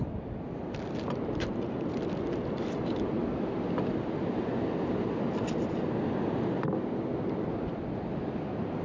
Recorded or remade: recorded